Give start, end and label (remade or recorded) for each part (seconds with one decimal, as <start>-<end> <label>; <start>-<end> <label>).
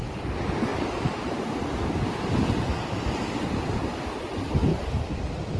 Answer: 0.0-0.7 recorded; 0.7-2.9 remade; 2.9-4.7 recorded; 4.7-5.6 remade